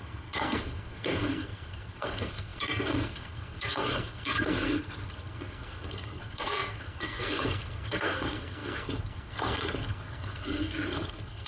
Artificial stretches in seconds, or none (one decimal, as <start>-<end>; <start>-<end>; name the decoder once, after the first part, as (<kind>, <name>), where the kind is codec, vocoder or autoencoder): 0.0-11.5 (codec, SNAC)